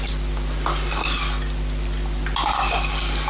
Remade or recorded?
recorded